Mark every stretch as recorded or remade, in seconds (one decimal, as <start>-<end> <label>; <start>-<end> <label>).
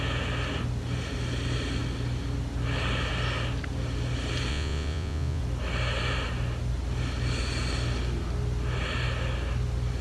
0.0-4.5 recorded; 4.5-5.4 remade; 5.4-10.0 recorded